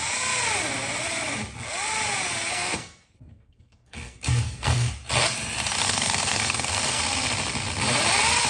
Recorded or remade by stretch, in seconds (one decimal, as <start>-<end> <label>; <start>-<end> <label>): 0.0-2.5 recorded; 2.5-4.9 remade; 4.9-5.8 recorded; 5.8-7.0 remade; 7.0-8.5 recorded

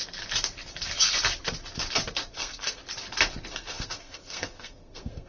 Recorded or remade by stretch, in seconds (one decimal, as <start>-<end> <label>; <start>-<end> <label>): 0.0-2.3 recorded; 2.3-2.8 remade; 2.8-3.5 recorded; 3.5-5.3 remade

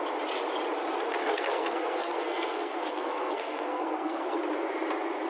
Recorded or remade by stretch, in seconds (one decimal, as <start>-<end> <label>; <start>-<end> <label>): 0.0-1.2 recorded; 1.2-4.4 remade; 4.4-5.3 recorded